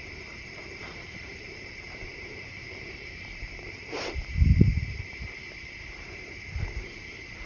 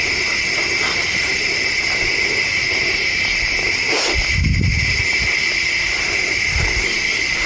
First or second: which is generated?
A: first